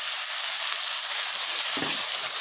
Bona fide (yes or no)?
yes